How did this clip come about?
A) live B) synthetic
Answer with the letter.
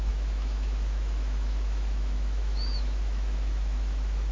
B